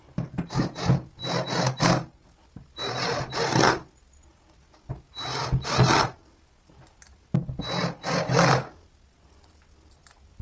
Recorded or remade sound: recorded